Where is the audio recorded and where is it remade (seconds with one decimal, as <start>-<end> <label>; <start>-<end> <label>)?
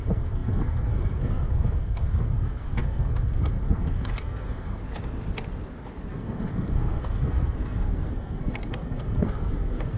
0.0-4.8 remade; 4.8-6.1 recorded; 6.1-10.0 remade